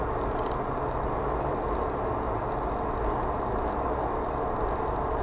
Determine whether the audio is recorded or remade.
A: recorded